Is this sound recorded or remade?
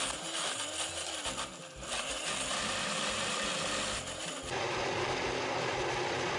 recorded